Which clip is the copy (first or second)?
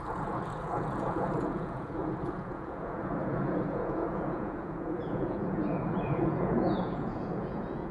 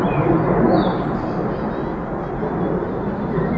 first